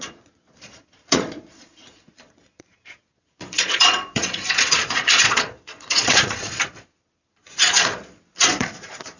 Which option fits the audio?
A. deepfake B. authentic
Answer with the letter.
A